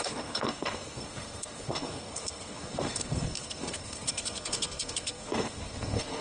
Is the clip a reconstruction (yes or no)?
yes